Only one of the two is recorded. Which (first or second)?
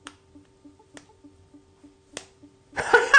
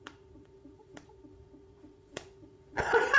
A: first